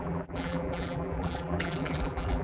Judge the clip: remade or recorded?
remade